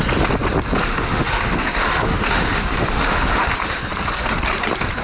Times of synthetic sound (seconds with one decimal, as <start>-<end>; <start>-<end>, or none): 0.8-3.8